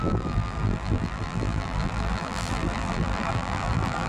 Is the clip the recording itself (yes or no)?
no